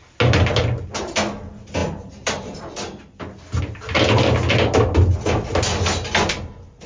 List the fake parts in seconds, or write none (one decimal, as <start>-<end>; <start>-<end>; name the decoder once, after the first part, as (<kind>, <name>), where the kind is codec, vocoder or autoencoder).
none